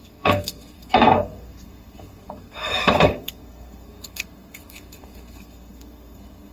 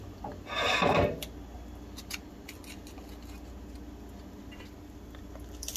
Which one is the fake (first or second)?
first